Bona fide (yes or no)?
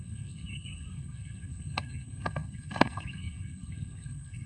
no